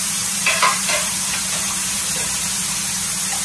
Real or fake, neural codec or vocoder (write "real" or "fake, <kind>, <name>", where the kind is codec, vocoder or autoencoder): fake, vocoder, BigVGAN v2